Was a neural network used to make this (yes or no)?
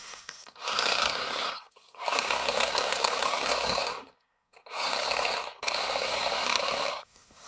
yes